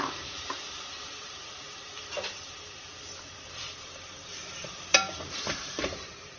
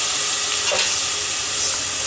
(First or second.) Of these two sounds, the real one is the second